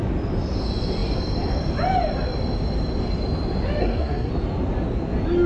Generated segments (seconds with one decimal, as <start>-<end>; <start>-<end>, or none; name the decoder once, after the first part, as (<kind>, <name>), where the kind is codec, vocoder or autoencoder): 3.8-4.3 (codec, SNAC)